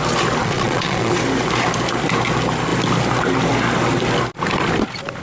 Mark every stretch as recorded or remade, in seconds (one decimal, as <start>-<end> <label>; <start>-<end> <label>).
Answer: 0.0-0.4 recorded; 0.4-1.1 remade; 1.1-5.2 recorded

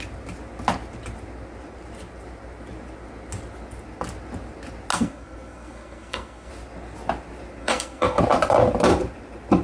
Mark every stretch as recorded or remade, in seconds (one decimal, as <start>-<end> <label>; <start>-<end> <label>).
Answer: 0.0-4.9 recorded; 4.9-6.5 remade; 6.5-7.6 recorded; 7.6-8.2 remade; 8.2-9.6 recorded